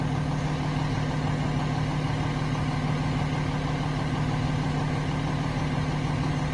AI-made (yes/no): no